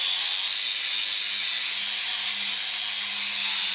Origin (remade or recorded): recorded